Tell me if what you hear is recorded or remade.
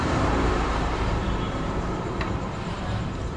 remade